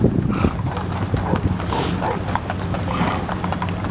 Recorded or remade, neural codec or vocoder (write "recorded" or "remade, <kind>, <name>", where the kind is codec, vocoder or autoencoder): recorded